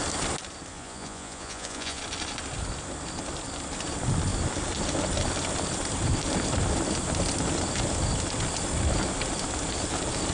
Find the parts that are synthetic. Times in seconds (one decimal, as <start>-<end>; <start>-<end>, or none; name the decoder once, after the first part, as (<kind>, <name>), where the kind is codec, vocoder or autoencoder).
0.7-2.0 (vocoder, Vocos)